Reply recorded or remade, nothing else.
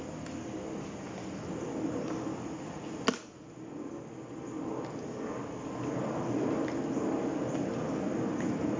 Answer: recorded